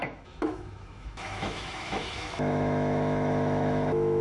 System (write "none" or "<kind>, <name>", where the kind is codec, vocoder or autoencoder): autoencoder, DAC-VAE